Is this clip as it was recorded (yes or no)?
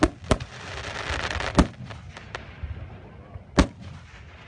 yes